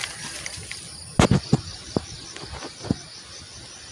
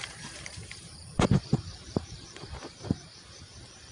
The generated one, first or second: second